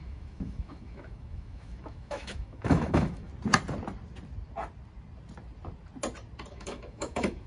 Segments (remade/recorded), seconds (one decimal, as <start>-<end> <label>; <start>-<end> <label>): 0.0-3.3 remade; 3.3-6.5 recorded; 6.5-7.5 remade